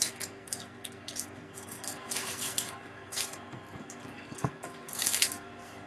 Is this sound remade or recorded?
remade